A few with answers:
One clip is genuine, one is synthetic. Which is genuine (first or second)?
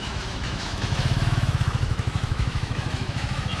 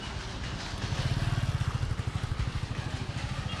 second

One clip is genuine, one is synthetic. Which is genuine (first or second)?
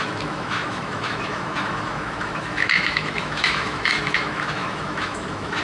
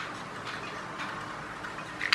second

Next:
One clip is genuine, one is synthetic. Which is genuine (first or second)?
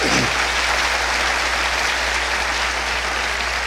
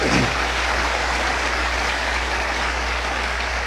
first